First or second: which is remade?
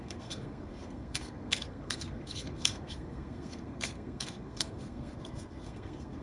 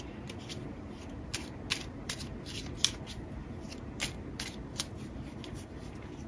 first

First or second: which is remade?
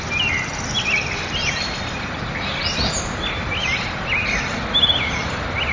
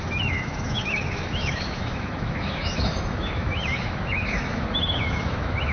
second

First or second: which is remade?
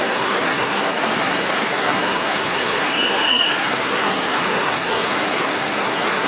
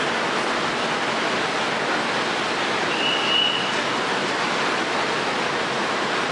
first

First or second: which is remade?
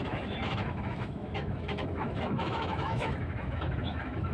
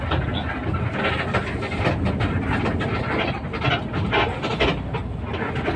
first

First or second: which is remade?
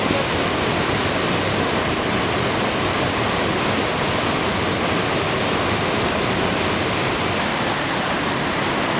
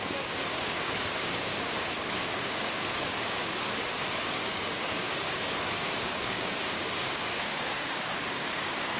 second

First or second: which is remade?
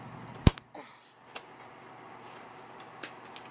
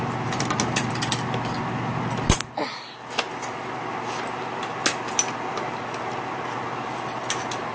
first